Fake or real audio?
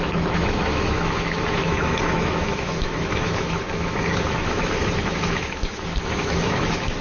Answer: fake